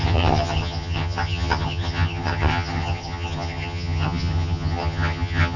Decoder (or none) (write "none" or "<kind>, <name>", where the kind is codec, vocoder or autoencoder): vocoder, HiFi-GAN